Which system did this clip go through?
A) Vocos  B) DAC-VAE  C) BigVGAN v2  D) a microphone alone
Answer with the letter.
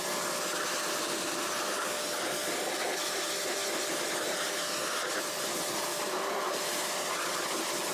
D